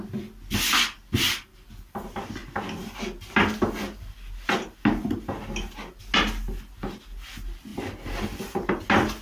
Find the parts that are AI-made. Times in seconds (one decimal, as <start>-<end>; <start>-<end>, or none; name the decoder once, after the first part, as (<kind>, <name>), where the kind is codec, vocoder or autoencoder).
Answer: 7.7-8.7 (vocoder, BigVGAN v2)